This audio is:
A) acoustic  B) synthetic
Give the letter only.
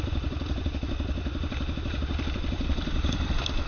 A